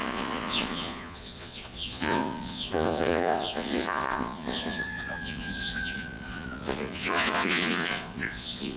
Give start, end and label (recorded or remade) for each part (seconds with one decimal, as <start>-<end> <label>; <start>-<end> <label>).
0.0-8.8 remade